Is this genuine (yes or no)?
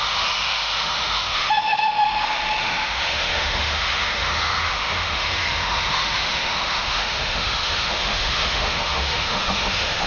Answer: no